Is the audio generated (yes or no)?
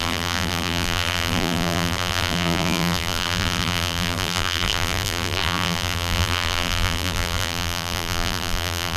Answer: yes